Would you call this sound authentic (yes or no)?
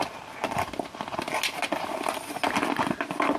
yes